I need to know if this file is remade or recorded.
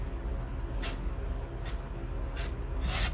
recorded